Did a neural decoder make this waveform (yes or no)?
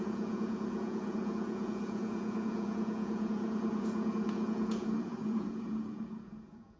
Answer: yes